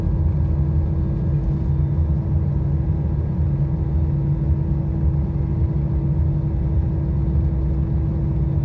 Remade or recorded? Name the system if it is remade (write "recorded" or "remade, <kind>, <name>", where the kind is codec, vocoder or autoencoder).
recorded